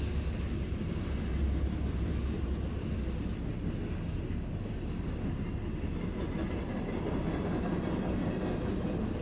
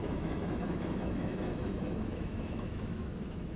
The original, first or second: first